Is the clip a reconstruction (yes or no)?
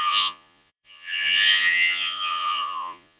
yes